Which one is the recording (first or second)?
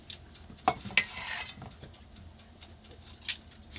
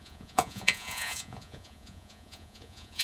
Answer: first